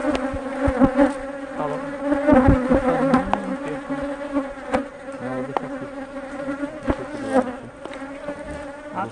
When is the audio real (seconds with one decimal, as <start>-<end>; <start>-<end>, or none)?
0.0-9.1